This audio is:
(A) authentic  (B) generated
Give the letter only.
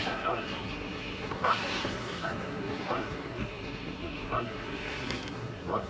B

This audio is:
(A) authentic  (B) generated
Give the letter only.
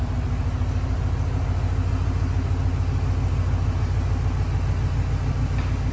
A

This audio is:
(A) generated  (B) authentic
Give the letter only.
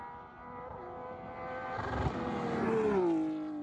B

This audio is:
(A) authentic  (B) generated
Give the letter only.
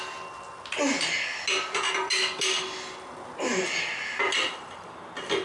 A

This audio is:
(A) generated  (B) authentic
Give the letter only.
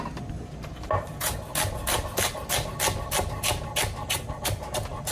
B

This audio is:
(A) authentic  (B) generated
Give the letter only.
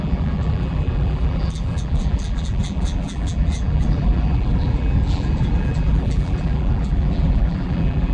B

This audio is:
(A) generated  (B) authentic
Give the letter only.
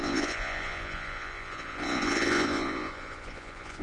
A